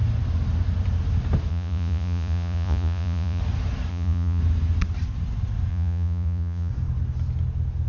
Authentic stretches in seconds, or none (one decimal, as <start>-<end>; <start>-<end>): 0.0-1.5; 3.4-3.9; 4.4-5.7; 6.7-7.9